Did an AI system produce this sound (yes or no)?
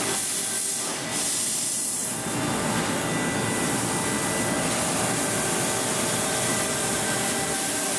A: no